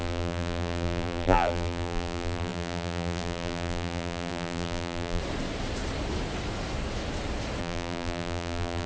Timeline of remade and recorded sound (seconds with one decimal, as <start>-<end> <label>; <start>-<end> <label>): 0.0-5.2 remade; 5.2-7.6 recorded; 7.6-8.9 remade